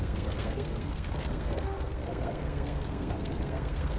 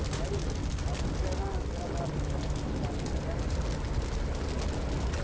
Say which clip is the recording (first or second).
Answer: second